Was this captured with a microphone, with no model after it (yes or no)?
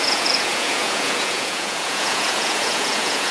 no